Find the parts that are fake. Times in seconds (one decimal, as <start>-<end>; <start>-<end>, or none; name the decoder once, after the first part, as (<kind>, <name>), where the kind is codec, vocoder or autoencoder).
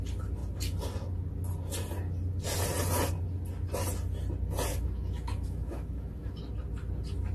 4.7-6.4 (autoencoder, DAC-VAE)